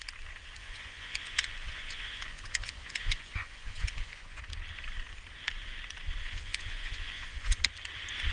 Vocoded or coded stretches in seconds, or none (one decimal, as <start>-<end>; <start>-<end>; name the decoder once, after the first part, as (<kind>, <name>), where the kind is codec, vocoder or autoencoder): 0.6-4.4 (vocoder, Vocos); 6.2-7.6

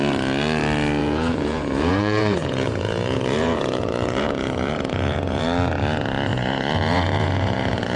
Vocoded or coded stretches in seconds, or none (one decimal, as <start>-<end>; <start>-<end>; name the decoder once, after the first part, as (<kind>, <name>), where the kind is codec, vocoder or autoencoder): 1.0-5.4 (vocoder, Vocos); 6.3-8.0

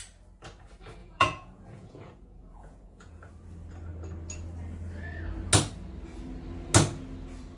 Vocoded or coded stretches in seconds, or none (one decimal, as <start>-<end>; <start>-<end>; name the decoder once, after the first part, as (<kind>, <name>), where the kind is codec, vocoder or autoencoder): 1.0-3.3 (vocoder, Vocos)

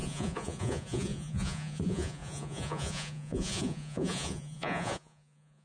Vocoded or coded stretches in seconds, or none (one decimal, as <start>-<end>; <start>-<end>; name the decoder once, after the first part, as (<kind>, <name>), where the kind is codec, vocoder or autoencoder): 0.0-5.6 (vocoder, Vocos)

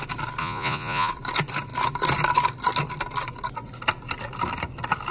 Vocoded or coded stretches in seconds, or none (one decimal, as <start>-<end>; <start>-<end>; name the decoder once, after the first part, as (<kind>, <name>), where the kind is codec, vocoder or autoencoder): 0.4-1.1 (vocoder, Vocos)

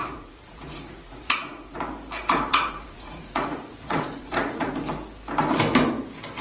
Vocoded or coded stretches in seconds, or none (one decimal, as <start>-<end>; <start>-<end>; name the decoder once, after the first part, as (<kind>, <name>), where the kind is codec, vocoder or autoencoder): 0.0-1.8 (vocoder, Vocos); 2.5-4.7